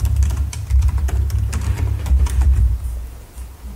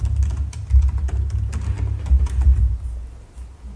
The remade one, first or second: first